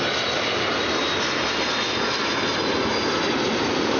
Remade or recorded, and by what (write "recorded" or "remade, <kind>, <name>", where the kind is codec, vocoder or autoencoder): remade, vocoder, BigVGAN v2